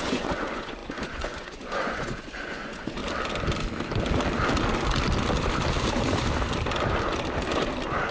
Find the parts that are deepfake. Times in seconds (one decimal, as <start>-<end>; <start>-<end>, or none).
0.0-3.0